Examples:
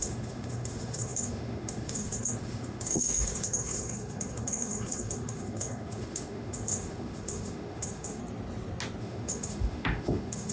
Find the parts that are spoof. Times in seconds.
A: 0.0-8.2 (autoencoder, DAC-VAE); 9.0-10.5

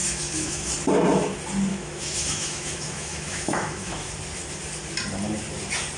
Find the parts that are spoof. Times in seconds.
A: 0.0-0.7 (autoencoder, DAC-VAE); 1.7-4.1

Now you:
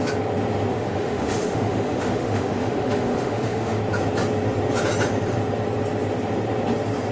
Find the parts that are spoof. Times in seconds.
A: 0.7-3.8 (autoencoder, DAC-VAE)